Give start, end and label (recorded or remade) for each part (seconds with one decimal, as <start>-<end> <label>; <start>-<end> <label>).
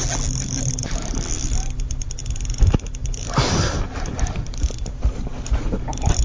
0.0-6.2 recorded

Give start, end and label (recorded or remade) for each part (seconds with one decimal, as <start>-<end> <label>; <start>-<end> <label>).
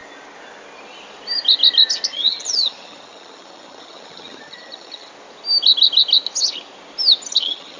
0.0-2.1 recorded; 2.1-5.1 remade; 5.1-7.3 recorded; 7.3-7.8 remade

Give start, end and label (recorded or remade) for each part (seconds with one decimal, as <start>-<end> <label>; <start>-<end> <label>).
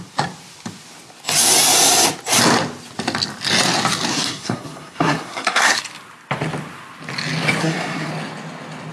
0.0-4.1 recorded; 4.1-5.8 remade; 5.8-7.6 recorded; 7.6-8.1 remade; 8.1-8.9 recorded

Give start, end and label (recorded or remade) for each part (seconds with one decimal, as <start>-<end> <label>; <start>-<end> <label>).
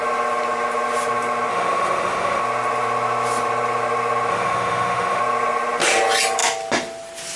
0.0-1.5 recorded; 1.5-2.4 remade; 2.4-4.3 recorded; 4.3-5.2 remade; 5.2-7.4 recorded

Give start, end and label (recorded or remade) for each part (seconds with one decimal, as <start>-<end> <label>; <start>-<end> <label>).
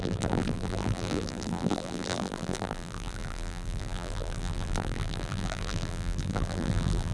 0.0-7.1 remade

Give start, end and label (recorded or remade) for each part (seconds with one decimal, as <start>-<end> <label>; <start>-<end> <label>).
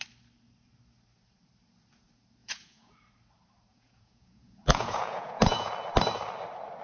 0.0-2.4 recorded; 2.4-2.9 remade; 2.9-3.7 recorded; 3.7-5.7 remade; 5.7-6.8 recorded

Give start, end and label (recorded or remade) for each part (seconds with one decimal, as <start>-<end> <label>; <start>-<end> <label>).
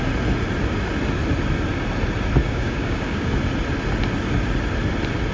0.0-2.4 recorded; 2.4-3.3 remade; 3.3-5.3 recorded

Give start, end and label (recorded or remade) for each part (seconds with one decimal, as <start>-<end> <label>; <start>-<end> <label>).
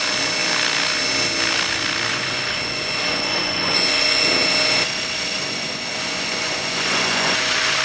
0.0-2.1 recorded; 2.1-4.3 remade; 4.3-5.4 recorded; 5.4-7.8 remade